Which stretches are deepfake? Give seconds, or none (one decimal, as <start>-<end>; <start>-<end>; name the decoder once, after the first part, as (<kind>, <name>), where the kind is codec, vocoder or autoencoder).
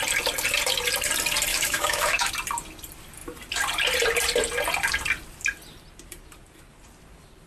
1.5-2.3 (autoencoder, DAC-VAE)